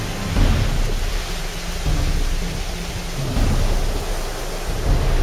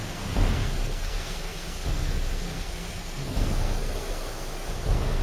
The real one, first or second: first